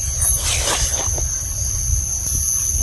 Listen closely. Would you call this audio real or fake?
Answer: real